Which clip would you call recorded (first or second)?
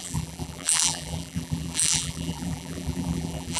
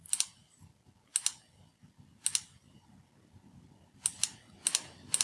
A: second